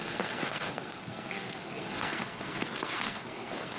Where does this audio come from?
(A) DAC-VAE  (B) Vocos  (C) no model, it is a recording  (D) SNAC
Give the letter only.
D